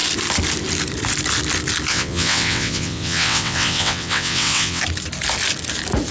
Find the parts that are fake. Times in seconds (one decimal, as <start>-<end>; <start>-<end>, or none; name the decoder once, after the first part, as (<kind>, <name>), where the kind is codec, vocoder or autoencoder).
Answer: 1.9-4.8 (vocoder, WaveNeXt)